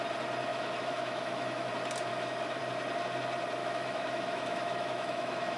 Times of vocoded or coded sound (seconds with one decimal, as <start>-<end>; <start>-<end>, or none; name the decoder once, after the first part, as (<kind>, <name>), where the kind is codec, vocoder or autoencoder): 0.5-1.7 (autoencoder, DAC-VAE); 2.1-2.6; 3.6-5.6